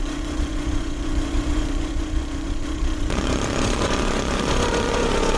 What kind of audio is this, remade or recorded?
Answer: remade